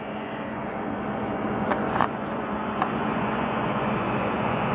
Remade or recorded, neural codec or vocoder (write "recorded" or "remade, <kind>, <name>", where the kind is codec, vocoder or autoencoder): remade, vocoder, Vocos